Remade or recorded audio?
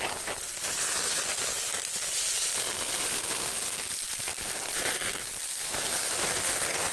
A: recorded